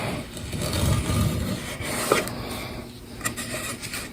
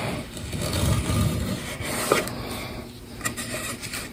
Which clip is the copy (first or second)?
second